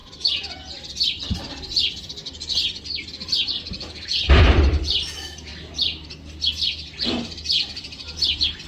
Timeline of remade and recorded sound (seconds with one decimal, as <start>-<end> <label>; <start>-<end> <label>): 0.0-1.4 recorded; 1.4-8.7 remade